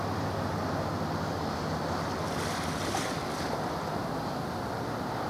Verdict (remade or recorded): recorded